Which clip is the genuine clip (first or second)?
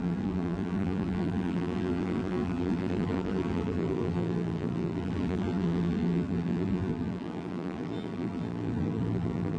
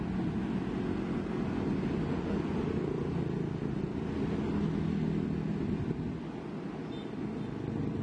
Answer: second